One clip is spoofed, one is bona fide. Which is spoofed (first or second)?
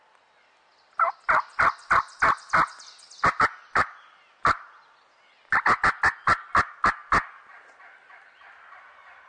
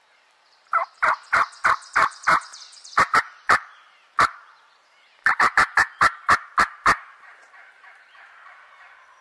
second